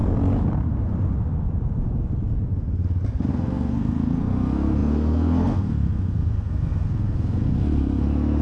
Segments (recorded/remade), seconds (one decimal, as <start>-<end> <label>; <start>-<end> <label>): 0.0-3.3 recorded; 3.3-8.4 remade